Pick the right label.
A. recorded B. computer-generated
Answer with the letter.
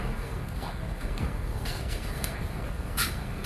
B